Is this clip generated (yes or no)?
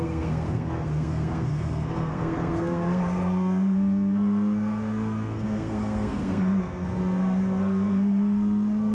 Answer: yes